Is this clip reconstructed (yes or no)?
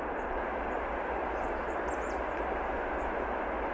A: no